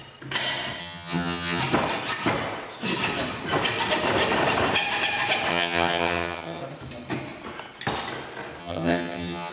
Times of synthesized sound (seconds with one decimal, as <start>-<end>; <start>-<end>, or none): 0.8-1.6; 5.5-6.6; 8.6-9.5